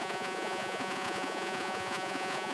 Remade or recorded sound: remade